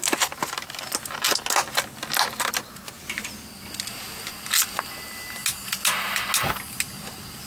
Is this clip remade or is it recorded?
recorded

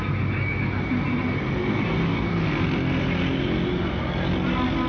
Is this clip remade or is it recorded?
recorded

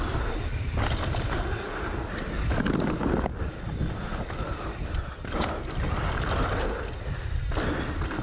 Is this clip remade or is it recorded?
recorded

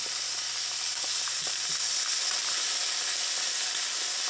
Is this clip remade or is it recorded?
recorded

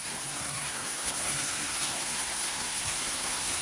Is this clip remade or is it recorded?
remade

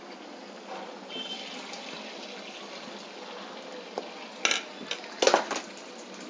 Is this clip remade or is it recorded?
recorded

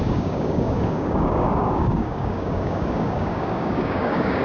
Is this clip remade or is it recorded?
remade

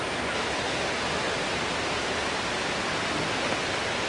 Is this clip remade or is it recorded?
remade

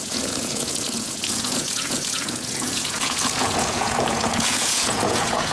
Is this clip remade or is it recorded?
remade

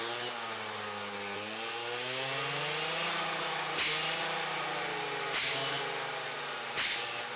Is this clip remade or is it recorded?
recorded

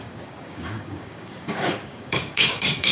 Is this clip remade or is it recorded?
remade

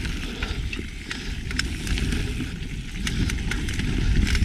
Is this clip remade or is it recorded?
recorded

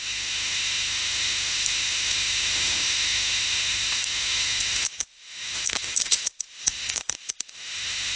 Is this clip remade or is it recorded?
remade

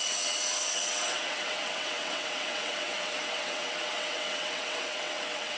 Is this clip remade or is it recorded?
remade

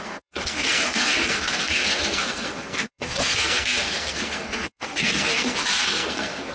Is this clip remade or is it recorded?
remade